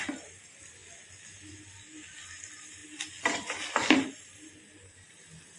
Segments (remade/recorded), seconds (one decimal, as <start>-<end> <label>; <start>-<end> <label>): 0.0-5.6 recorded